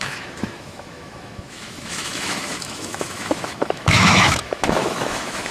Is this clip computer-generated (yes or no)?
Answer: yes